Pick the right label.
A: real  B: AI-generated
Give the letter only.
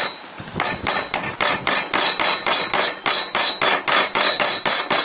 A